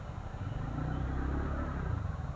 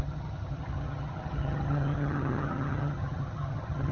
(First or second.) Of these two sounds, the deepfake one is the second